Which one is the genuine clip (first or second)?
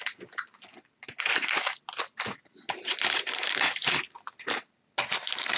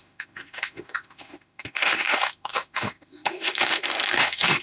first